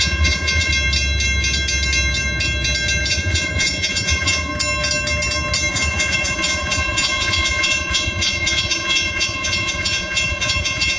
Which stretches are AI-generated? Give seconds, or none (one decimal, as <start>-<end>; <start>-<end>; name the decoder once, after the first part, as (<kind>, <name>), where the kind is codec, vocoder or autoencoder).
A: 0.0-0.7 (vocoder, Vocos); 3.1-4.5; 5.7-11.0

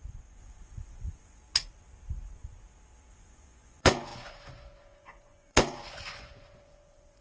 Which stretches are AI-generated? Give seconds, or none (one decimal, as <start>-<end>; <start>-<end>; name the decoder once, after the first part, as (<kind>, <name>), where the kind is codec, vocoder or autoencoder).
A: 0.0-1.4 (vocoder, Vocos); 3.1-7.2

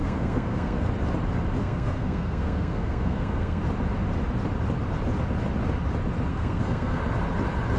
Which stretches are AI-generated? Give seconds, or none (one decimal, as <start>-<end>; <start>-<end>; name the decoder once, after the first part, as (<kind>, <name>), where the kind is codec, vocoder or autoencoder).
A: 0.0-0.9 (codec, SNAC); 1.6-3.6; 6.3-7.0

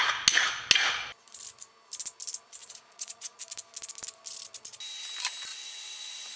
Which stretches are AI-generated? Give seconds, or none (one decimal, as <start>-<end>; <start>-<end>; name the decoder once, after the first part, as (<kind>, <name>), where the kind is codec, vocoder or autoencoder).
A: 2.6-3.4 (vocoder, Vocos); 5.5-6.4

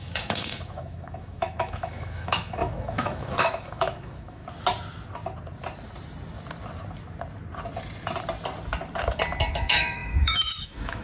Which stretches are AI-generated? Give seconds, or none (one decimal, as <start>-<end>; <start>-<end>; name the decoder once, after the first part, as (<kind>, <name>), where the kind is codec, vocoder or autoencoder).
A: 0.0-4.4 (autoencoder, DAC-VAE); 9.5-11.0